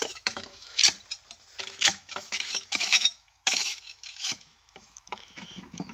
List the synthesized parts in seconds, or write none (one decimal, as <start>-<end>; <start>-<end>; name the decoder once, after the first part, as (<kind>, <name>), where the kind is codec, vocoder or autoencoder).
0.0-0.8 (autoencoder, DAC-VAE); 1.6-5.9